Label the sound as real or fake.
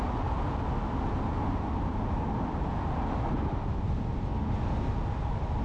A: real